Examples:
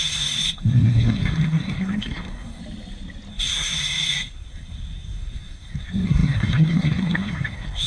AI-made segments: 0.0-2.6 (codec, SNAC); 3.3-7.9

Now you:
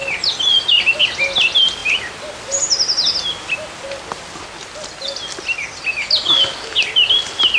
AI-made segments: none

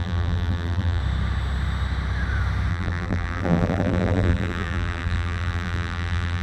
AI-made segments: 0.0-1.0 (vocoder, BigVGAN v2); 2.7-6.4

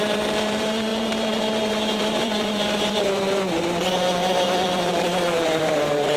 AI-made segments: 0.0-6.2 (vocoder, BigVGAN v2)

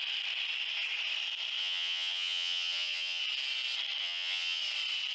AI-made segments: 1.6-3.2 (vocoder, HiFi-GAN); 4.0-4.6

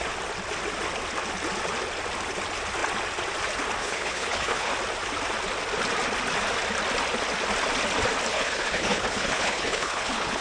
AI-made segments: 3.8-4.7 (codec, HILCodec); 8.3-10.4

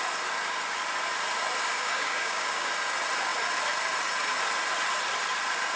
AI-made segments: 1.6-2.7 (codec, DAC)

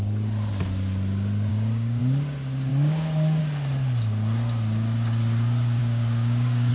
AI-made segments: 1.5-2.0 (codec, DAC); 2.7-3.4; 5.8-6.7